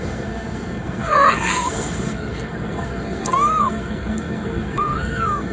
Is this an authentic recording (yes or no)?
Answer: no